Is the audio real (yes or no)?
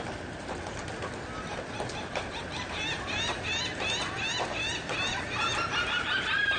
yes